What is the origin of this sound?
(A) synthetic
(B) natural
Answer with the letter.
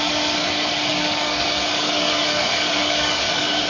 A